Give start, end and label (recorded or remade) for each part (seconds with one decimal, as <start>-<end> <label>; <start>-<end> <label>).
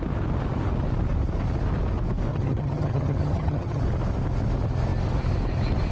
0.0-2.3 recorded; 2.3-3.8 remade; 3.8-5.9 recorded